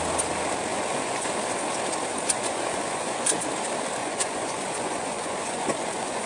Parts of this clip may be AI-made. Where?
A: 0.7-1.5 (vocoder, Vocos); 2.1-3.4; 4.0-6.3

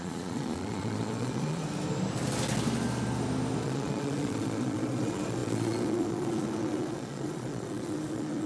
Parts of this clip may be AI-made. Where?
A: 0.0-1.6 (vocoder, Vocos); 3.6-8.5

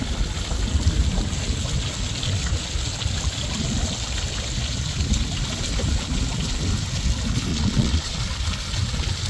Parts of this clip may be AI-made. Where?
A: 7.5-8.2 (vocoder, Vocos)

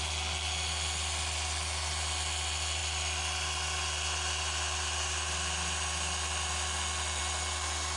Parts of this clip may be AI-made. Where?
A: none

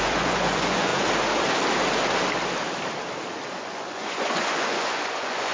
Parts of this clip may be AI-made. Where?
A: 0.0-0.9 (vocoder, Vocos); 3.5-5.5

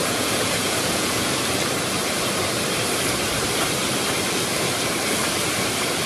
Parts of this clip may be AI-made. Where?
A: 0.0-1.3 (vocoder, Vocos)